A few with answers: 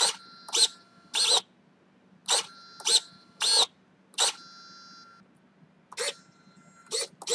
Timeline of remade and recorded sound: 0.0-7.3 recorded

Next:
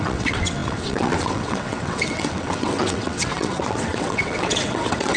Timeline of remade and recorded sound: 0.0-5.2 remade

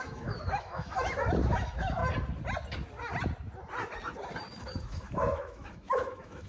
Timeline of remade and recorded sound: 0.0-2.0 remade; 2.0-4.6 recorded; 4.6-6.5 remade